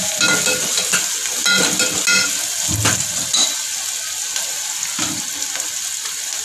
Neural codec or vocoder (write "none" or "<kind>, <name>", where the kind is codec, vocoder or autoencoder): none